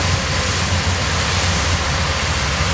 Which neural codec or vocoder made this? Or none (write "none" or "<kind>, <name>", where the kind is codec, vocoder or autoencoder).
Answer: none